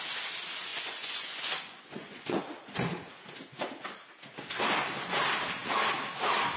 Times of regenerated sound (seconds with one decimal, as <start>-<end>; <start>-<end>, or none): 0.7-2.4